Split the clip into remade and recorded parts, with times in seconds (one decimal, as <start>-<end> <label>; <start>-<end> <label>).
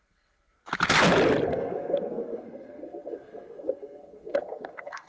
0.0-0.6 remade; 0.6-1.5 recorded; 1.5-5.1 remade